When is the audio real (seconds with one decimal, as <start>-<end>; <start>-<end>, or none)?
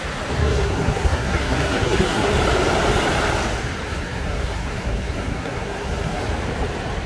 0.0-0.4; 2.3-3.9; 6.2-7.1